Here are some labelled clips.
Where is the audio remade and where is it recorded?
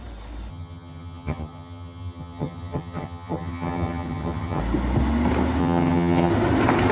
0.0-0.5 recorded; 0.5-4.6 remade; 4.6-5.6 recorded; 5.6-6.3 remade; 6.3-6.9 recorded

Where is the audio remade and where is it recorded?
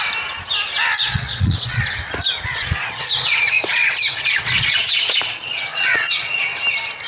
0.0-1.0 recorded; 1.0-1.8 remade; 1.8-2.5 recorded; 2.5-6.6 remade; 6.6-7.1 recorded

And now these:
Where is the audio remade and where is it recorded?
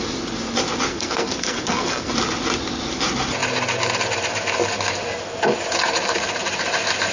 0.0-0.9 recorded; 0.9-2.1 remade; 2.1-7.1 recorded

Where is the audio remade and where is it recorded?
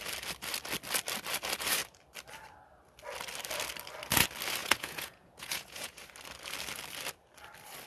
0.0-4.6 recorded; 4.6-6.0 remade; 6.0-7.9 recorded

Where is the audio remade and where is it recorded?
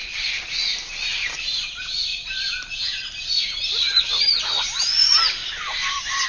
0.0-0.5 remade; 0.5-5.4 recorded; 5.4-6.3 remade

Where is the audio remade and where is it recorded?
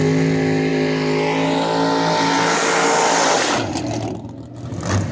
0.0-5.1 recorded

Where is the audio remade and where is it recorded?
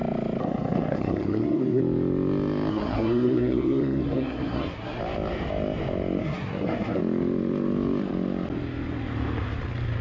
0.0-0.4 recorded; 0.4-1.8 remade; 1.8-2.7 recorded; 2.7-5.0 remade; 5.0-6.2 recorded; 6.2-7.0 remade; 7.0-10.0 recorded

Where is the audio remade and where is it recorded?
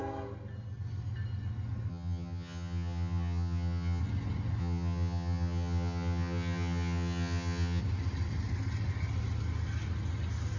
0.0-1.9 recorded; 1.9-4.0 remade; 4.0-4.6 recorded; 4.6-7.8 remade; 7.8-10.6 recorded